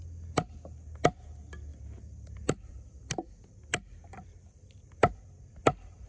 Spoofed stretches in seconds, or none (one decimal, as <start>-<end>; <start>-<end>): 1.7-5.4